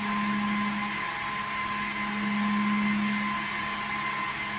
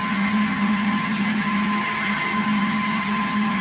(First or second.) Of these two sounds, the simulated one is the second